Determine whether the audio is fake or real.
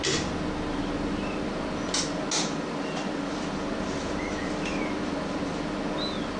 real